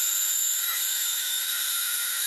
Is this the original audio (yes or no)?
no